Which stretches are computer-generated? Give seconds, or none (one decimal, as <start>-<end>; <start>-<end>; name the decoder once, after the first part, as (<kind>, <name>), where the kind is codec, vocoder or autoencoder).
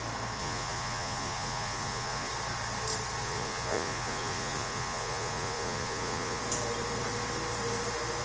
0.4-2.3 (vocoder, Vocos); 3.2-6.4